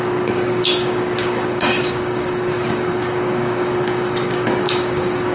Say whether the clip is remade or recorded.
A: remade